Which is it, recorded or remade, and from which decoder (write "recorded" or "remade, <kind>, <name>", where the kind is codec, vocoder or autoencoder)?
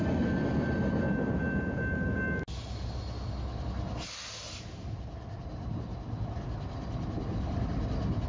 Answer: recorded